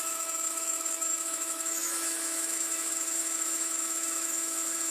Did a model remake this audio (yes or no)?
yes